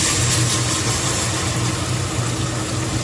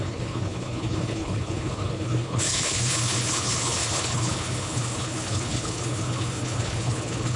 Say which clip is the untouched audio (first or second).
first